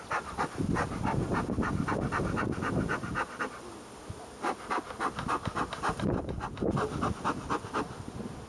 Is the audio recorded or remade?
recorded